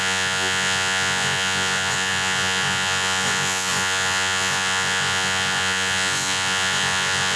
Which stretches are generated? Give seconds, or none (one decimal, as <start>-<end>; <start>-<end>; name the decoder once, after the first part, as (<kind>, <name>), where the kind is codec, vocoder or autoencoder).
0.0-7.4 (vocoder, Vocos)